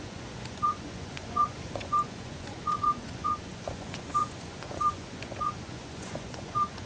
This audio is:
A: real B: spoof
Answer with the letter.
B